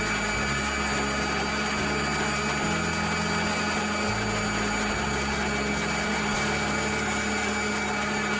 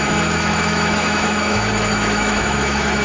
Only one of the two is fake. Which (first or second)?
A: second